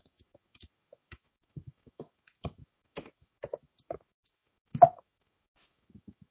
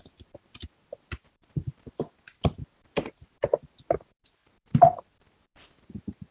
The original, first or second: second